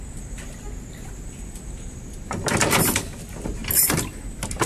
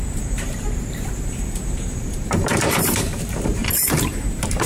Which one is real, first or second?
first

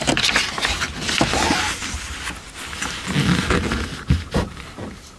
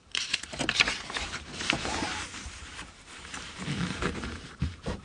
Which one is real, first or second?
first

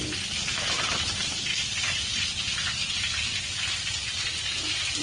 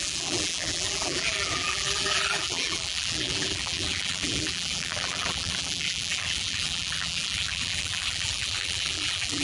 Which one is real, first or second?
first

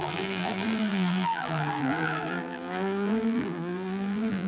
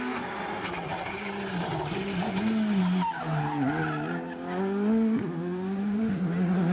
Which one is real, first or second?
second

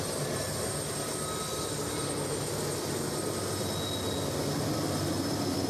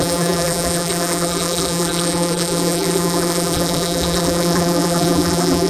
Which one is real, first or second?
first